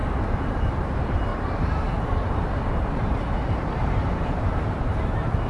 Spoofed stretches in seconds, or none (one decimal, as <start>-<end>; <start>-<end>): 0.6-5.5